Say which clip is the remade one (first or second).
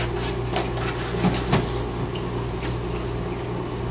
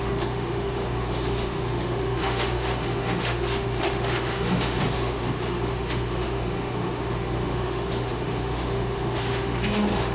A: second